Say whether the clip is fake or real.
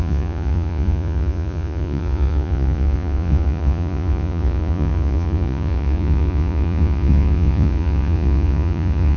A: fake